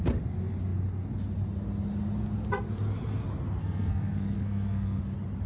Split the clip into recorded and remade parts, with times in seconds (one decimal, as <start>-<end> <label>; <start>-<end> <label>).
0.0-3.6 recorded; 3.6-5.0 remade; 5.0-5.5 recorded